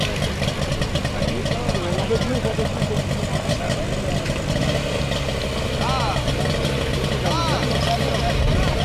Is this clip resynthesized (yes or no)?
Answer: no